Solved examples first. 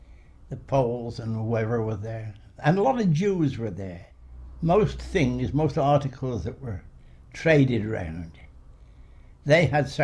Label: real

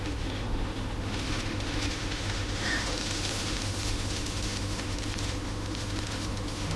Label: fake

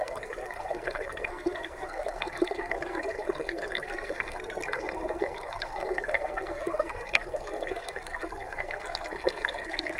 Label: fake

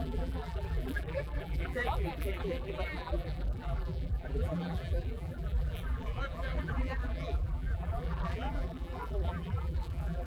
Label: fake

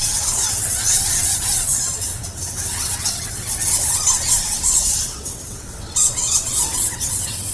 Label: fake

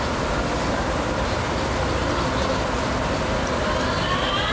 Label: real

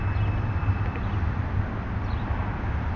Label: real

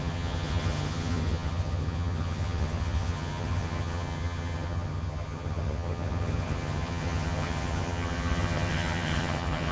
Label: fake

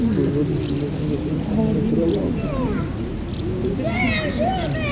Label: real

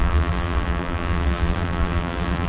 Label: fake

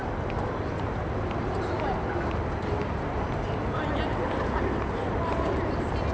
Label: real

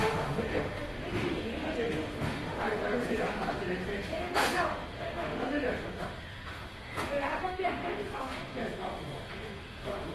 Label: fake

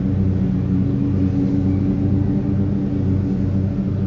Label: real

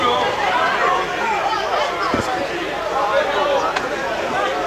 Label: real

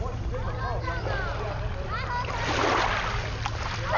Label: real